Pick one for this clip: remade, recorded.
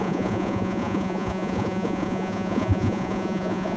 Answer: remade